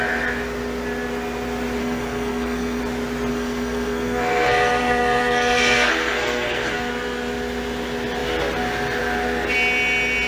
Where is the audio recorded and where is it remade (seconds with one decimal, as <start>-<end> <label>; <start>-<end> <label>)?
0.0-1.8 recorded; 1.8-2.8 remade; 2.8-3.3 recorded; 3.3-6.9 remade; 6.9-10.3 recorded